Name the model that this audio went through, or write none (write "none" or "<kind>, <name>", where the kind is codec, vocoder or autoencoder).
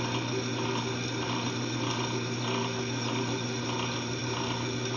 none